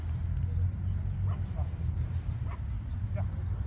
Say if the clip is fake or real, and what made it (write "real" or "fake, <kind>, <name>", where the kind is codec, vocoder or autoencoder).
real